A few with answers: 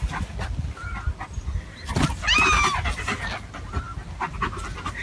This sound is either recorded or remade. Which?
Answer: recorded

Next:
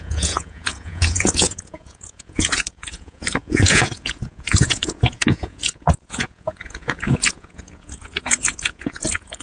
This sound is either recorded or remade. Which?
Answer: remade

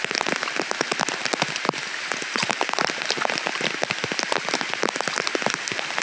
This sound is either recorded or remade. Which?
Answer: recorded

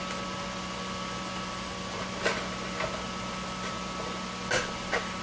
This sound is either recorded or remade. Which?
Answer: recorded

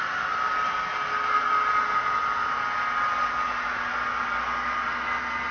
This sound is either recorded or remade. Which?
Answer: recorded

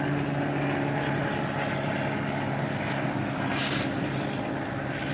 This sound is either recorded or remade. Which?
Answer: recorded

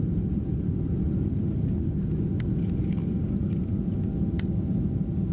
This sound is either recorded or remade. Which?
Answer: recorded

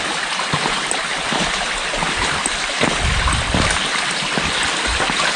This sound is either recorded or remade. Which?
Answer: recorded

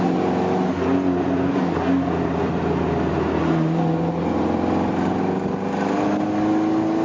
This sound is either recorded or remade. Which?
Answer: recorded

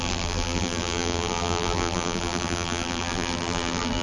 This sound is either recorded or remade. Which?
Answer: remade